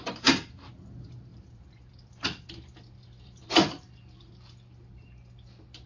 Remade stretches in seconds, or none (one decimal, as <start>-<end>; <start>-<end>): 1.3-4.3